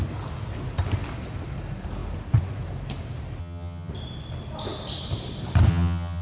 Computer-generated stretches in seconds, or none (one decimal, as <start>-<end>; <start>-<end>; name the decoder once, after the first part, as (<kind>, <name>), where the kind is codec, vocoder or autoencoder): 3.4-3.9 (vocoder, HiFi-GAN); 5.7-6.2

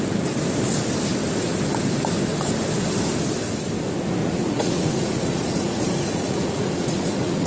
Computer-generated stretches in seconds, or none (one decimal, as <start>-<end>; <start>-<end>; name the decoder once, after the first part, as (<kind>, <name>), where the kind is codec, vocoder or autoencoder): 4.2-7.5 (vocoder, Vocos)

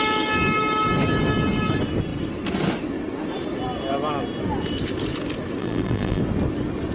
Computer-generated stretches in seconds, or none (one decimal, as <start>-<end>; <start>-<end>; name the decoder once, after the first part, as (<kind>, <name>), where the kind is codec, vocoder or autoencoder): 5.6-6.2 (vocoder, BigVGAN v2)

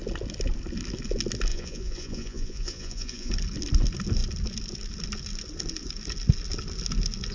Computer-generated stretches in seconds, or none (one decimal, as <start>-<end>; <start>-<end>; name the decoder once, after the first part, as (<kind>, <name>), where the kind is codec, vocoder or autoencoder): 1.5-3.3 (vocoder, Vocos)